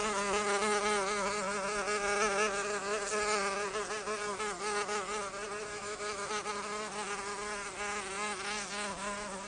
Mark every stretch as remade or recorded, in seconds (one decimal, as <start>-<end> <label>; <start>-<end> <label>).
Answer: 0.0-5.7 recorded; 5.7-6.3 remade; 6.3-9.5 recorded